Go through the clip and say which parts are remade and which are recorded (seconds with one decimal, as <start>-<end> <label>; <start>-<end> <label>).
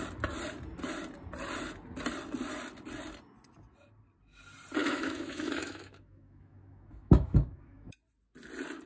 0.0-4.8 recorded; 4.8-7.9 remade; 7.9-8.9 recorded